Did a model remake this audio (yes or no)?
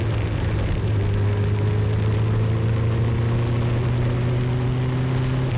no